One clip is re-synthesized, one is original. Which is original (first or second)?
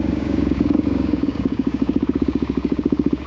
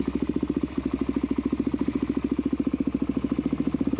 second